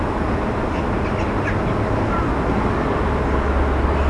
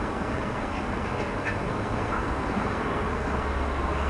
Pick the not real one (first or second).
second